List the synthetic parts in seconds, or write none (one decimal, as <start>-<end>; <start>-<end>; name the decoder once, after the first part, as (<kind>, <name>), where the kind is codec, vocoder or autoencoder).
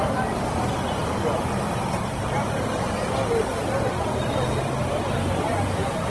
none